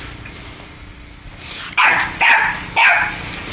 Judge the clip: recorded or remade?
recorded